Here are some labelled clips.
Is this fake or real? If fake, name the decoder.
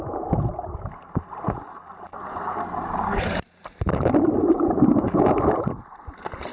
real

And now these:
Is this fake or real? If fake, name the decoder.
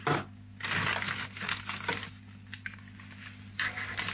real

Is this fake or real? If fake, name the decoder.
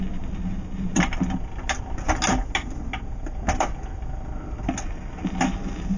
real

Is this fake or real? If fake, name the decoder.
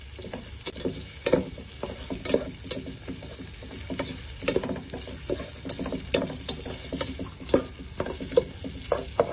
real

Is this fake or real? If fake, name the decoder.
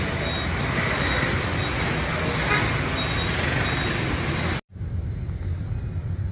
real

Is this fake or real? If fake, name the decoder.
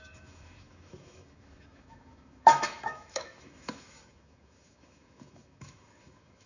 fake, autoencoder, DAC-VAE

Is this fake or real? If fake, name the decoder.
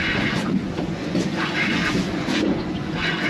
fake, vocoder, Vocos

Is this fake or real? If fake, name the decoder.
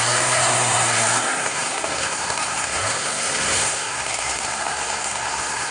fake, codec, SNAC